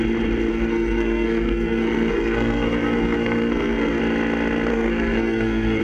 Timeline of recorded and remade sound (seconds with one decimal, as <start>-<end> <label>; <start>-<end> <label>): 0.0-0.5 recorded; 0.5-4.0 remade; 4.0-4.7 recorded; 4.7-5.8 remade